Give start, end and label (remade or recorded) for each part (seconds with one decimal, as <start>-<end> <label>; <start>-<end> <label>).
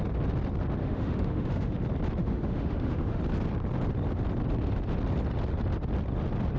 0.0-0.8 recorded; 0.8-1.8 remade; 1.8-2.2 recorded; 2.2-3.2 remade; 3.2-6.6 recorded